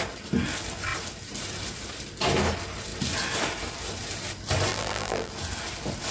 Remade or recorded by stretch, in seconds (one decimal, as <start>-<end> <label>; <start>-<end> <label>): 0.0-4.7 recorded; 4.7-5.3 remade; 5.3-6.1 recorded